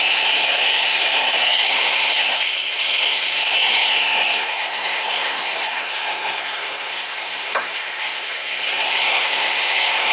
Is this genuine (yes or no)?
no